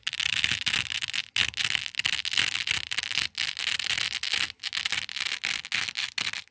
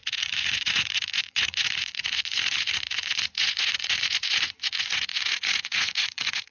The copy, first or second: second